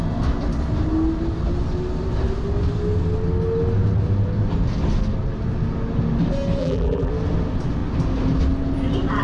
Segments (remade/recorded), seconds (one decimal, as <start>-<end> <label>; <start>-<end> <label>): 0.0-6.6 recorded; 6.6-7.1 remade; 7.1-9.2 recorded